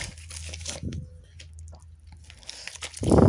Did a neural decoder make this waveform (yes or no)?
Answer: no